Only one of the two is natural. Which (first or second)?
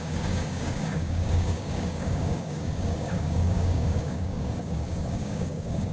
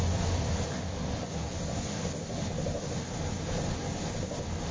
second